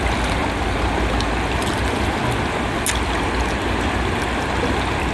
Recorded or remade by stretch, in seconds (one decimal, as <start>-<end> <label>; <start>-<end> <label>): 0.0-5.1 recorded